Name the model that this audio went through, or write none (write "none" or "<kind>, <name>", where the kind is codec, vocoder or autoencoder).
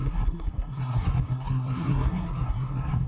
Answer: codec, SNAC